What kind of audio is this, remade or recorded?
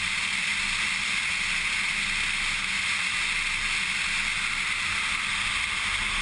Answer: recorded